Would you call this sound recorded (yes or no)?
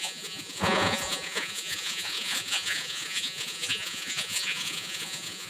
no